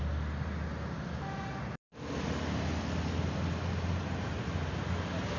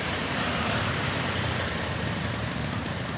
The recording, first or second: first